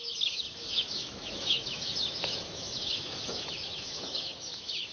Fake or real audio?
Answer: fake